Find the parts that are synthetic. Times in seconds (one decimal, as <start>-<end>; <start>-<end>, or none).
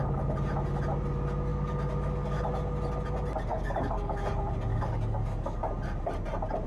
1.5-2.4; 3.5-4.3; 4.7-5.6